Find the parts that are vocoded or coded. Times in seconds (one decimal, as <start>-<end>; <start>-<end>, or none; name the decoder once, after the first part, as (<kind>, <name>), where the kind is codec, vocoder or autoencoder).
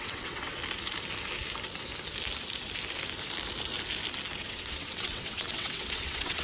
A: 0.0-0.6 (vocoder, WaveNeXt); 4.4-6.4